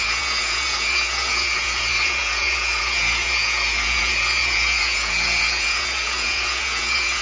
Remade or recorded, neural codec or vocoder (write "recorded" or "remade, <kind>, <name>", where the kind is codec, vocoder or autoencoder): remade, vocoder, Vocos